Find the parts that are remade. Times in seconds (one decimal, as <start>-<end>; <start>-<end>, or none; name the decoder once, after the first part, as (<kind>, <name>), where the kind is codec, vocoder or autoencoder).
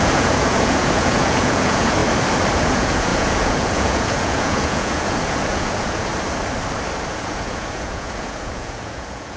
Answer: 0.0-2.0 (vocoder, Vocos); 2.5-6.1; 7.1-9.4